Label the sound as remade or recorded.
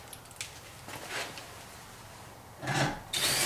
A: recorded